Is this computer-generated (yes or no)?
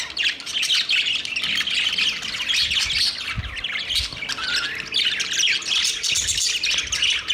no